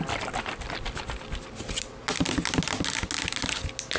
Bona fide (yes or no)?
yes